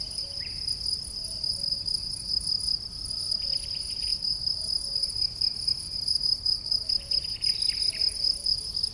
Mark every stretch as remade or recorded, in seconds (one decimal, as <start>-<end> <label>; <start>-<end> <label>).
0.0-8.9 recorded